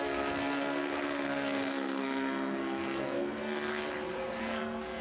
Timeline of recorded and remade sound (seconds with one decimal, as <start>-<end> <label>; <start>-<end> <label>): 0.0-3.8 remade; 3.8-4.4 recorded; 4.4-5.0 remade